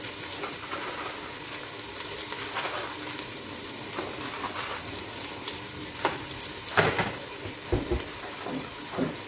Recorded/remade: recorded